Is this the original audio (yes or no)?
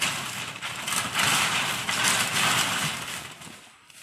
yes